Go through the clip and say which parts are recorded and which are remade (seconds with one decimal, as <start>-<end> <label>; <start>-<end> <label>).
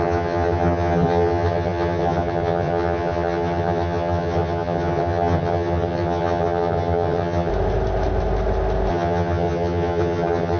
0.0-7.5 remade; 7.5-8.9 recorded; 8.9-10.6 remade